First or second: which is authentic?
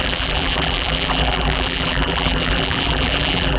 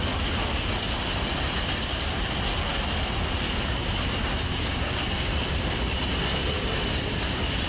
second